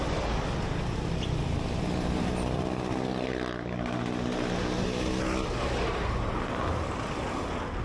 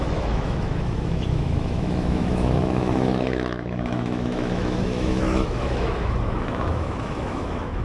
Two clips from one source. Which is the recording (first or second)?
first